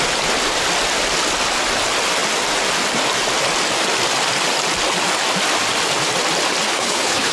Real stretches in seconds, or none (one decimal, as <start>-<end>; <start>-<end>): 0.0-6.7